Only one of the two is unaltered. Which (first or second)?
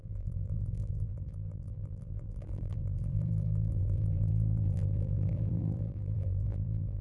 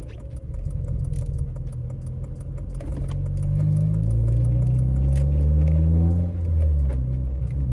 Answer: second